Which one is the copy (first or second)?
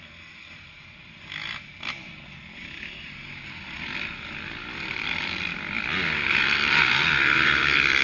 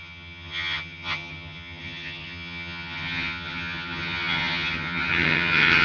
second